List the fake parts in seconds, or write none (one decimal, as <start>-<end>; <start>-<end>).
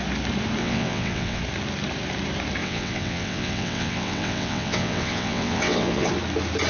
0.6-1.4; 2.6-6.1